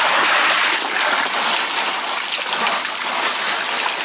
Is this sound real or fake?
real